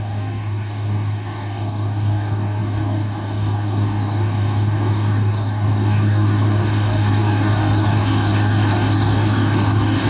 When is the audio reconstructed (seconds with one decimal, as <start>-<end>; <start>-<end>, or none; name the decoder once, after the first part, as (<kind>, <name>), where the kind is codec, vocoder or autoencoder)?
0.0-10.1 (codec, DAC)